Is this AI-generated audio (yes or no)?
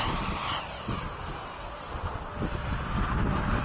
no